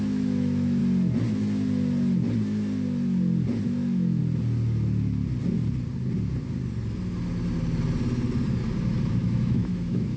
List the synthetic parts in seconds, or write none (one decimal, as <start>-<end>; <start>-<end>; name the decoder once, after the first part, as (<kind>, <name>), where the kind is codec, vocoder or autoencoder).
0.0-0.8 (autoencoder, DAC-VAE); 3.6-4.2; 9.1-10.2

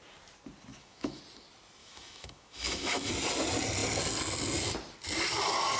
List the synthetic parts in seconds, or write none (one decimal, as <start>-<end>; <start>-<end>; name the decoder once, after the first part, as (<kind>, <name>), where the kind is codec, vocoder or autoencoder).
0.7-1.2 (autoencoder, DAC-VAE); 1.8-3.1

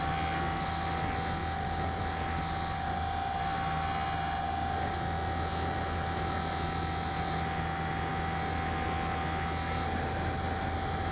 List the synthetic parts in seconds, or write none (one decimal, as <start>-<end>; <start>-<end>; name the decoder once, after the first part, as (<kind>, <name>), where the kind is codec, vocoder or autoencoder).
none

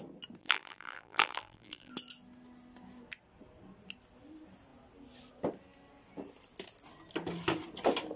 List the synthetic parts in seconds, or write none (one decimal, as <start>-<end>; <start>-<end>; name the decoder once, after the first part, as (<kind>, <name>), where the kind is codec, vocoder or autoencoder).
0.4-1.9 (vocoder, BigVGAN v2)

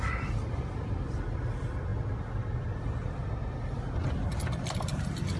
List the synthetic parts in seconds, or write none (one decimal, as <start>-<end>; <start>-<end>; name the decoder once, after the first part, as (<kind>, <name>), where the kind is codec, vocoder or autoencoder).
none